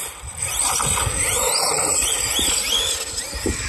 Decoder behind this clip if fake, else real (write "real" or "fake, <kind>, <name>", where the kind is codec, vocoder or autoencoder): real